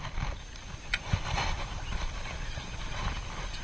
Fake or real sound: real